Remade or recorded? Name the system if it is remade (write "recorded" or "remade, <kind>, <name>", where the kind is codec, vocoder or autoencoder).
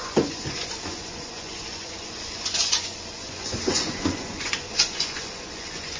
remade, vocoder, Vocos